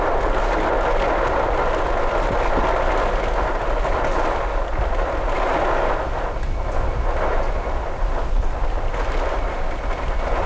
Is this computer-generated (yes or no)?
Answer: no